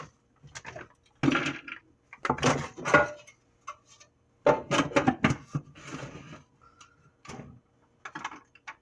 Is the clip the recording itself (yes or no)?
yes